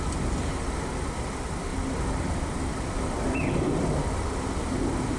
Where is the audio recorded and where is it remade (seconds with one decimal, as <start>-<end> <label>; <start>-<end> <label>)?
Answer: 0.0-5.2 remade